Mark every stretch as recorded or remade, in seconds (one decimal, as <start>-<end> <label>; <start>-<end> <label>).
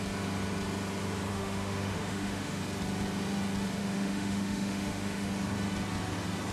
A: 0.0-1.3 recorded; 1.3-2.6 remade; 2.6-3.8 recorded; 3.8-5.3 remade; 5.3-6.5 recorded